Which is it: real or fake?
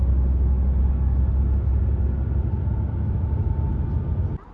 real